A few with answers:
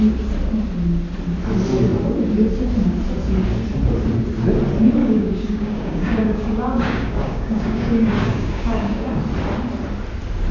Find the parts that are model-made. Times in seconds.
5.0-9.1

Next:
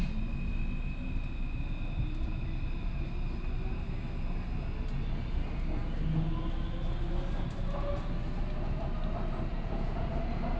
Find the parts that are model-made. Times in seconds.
9.5-10.1

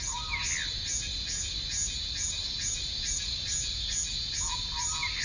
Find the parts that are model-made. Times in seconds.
none

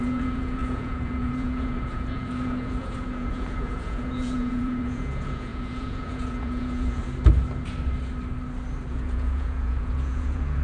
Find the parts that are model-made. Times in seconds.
0.0-7.0; 8.9-10.6

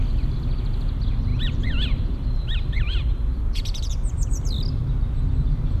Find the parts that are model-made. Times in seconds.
1.3-4.8

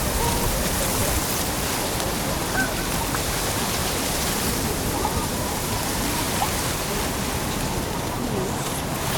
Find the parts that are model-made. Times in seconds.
1.0-2.8; 3.8-6.3